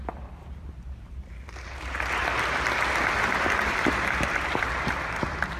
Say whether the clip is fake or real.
real